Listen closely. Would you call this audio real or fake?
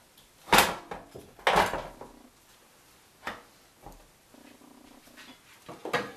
real